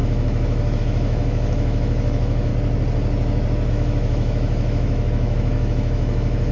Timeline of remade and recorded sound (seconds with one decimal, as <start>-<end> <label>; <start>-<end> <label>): 0.0-2.5 remade; 2.5-3.7 recorded; 3.7-6.5 remade